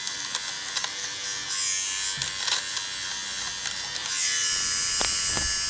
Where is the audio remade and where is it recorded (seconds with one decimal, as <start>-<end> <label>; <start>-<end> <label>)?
0.0-4.0 recorded; 4.0-5.3 remade; 5.3-5.7 recorded